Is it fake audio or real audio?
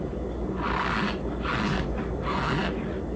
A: real